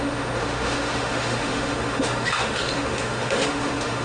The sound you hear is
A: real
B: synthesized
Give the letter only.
B